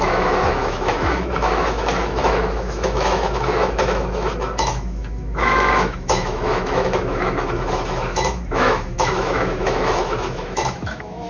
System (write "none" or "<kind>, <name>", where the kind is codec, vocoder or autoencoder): autoencoder, DAC-VAE